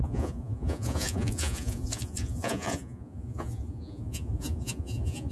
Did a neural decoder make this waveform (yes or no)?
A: yes